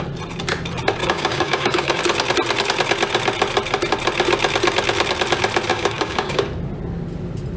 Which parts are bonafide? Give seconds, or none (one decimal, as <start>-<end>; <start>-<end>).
0.0-1.0; 2.0-5.7; 6.4-7.6